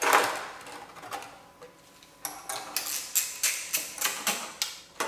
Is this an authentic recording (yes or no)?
yes